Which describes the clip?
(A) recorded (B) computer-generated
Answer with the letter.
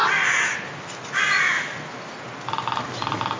A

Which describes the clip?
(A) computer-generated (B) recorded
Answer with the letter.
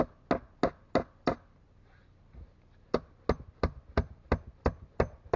B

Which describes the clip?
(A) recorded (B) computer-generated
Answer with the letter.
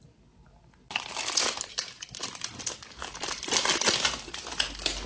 A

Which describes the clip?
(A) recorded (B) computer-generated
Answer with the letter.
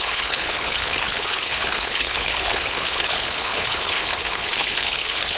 B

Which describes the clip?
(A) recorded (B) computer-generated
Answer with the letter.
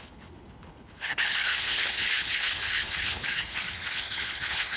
B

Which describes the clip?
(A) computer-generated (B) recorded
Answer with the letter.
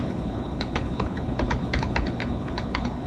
A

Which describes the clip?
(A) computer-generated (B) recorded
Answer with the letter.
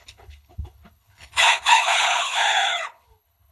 A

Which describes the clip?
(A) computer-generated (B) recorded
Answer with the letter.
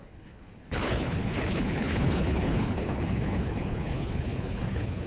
A